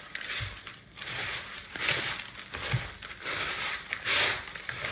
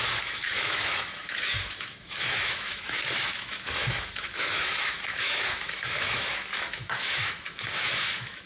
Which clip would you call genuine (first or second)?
first